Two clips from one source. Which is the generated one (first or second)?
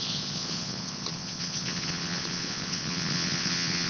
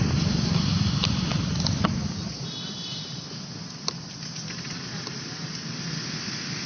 first